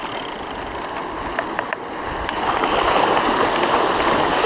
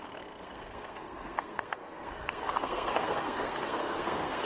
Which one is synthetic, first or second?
second